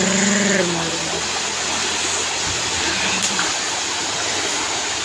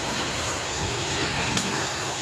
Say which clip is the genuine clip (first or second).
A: first